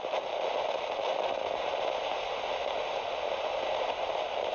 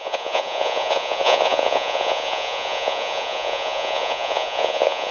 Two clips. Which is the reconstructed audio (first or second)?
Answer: second